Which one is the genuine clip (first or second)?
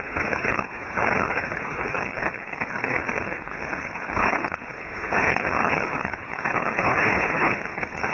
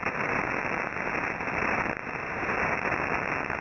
second